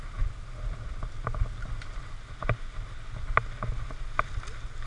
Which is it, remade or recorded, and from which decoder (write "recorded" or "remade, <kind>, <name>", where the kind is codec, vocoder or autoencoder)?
recorded